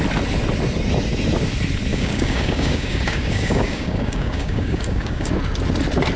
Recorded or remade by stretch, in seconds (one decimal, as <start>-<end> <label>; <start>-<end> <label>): 0.0-1.9 recorded; 1.9-5.3 remade; 5.3-6.2 recorded